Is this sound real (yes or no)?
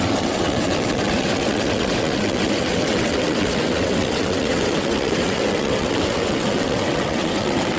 no